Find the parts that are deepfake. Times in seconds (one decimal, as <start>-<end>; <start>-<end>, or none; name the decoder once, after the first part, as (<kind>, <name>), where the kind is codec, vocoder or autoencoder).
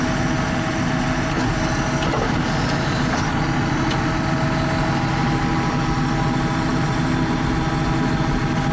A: none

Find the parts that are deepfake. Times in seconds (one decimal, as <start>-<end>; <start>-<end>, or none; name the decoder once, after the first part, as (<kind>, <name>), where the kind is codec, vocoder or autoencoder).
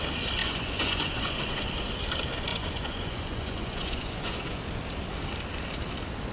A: 0.4-1.4 (vocoder, Vocos); 2.5-4.6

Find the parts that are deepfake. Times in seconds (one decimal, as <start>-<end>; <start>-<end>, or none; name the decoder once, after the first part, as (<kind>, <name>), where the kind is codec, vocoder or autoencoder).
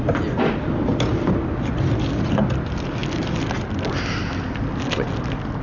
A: none